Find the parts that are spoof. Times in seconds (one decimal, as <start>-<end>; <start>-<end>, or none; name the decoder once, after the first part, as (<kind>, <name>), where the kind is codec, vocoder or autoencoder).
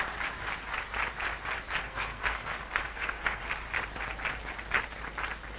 1.8-3.4 (codec, SNAC)